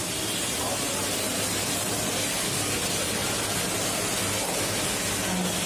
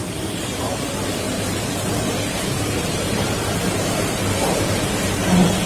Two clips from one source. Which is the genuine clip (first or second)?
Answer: first